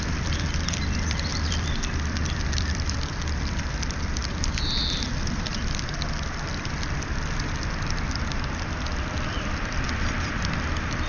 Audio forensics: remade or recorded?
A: remade